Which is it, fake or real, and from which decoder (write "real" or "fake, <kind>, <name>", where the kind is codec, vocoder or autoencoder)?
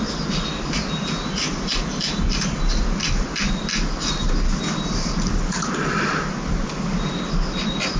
real